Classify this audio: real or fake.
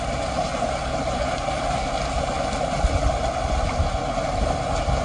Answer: real